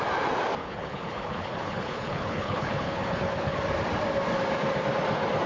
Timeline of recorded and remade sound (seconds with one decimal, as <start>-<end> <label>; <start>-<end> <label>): 0.0-0.6 recorded; 0.6-3.6 remade; 3.6-5.5 recorded